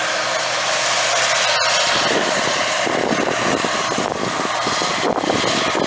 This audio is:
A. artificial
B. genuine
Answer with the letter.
B